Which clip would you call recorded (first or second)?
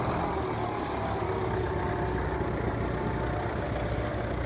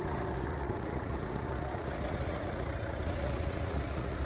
first